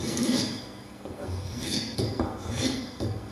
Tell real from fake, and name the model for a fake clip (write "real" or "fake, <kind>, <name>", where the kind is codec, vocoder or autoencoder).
fake, codec, SNAC